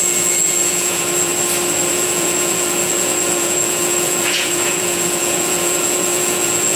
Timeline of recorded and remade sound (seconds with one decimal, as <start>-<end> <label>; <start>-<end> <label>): 0.0-1.3 remade; 1.3-1.9 recorded; 1.9-6.8 remade